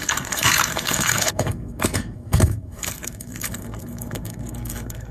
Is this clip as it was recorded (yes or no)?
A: no